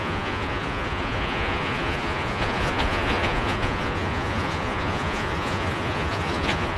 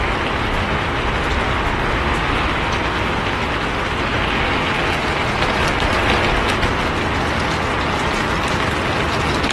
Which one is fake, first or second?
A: first